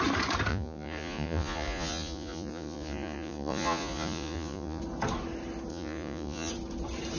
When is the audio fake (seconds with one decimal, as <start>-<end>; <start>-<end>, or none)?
0.5-4.8; 5.7-6.5